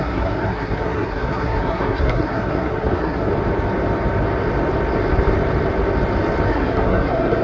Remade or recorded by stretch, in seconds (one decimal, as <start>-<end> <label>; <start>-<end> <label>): 0.0-3.3 remade; 3.3-6.5 recorded; 6.5-7.4 remade